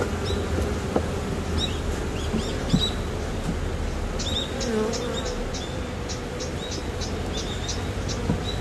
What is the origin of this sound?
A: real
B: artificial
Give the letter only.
A